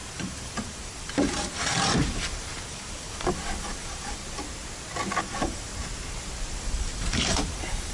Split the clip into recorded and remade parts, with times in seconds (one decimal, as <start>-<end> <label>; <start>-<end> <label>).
0.0-4.2 remade; 4.2-5.2 recorded; 5.2-5.7 remade; 5.7-6.6 recorded; 6.6-7.9 remade